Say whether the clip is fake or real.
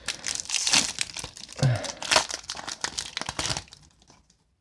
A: real